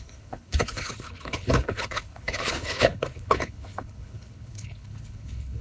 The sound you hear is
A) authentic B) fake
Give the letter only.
B